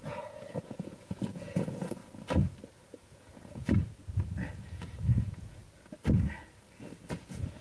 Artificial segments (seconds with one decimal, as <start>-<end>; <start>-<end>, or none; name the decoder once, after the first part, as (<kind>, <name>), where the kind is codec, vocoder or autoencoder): 0.0-2.0 (vocoder, Vocos); 2.9-3.8; 4.7-5.6; 7.1-7.6